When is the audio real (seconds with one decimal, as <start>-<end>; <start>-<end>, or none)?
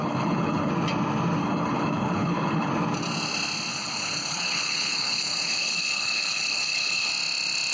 0.7-1.4; 2.7-3.7; 7.1-7.7